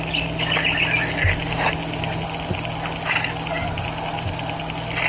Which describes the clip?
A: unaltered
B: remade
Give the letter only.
A